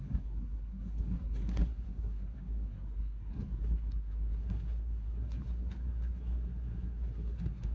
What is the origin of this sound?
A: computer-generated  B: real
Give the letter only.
A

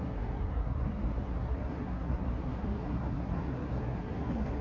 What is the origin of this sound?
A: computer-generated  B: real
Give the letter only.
A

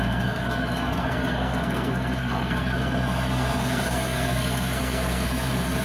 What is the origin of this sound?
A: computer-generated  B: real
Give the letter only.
A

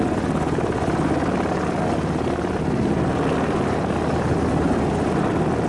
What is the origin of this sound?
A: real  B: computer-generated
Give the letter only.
A